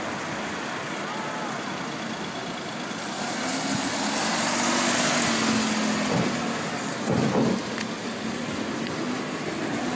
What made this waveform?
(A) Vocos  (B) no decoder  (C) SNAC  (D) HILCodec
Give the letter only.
B